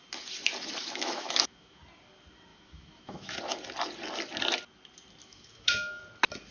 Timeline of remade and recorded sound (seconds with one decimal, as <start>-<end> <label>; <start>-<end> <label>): 0.0-0.8 recorded; 0.8-1.8 remade; 1.8-2.5 recorded; 2.5-3.4 remade; 3.4-5.2 recorded; 5.2-6.0 remade; 6.0-6.5 recorded